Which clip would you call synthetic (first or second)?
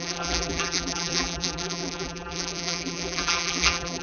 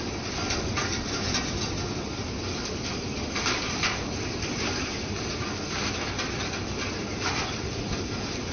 first